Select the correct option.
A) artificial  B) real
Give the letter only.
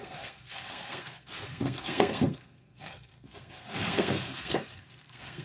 A